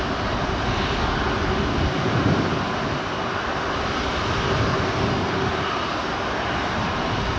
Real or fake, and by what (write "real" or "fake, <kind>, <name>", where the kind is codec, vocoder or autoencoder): real